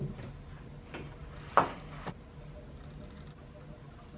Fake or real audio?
real